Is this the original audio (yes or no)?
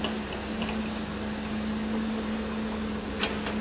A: yes